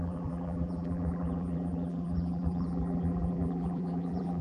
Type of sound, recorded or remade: remade